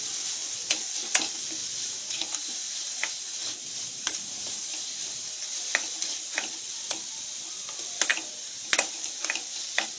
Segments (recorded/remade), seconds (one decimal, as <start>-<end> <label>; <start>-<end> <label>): 0.0-1.6 recorded; 1.6-6.5 remade; 6.5-8.1 recorded; 8.1-8.9 remade; 8.9-10.0 recorded